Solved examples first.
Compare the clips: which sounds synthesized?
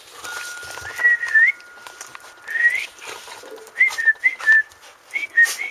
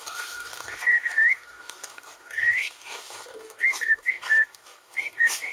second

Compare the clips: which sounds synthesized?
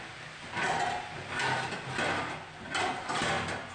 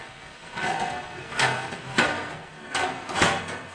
second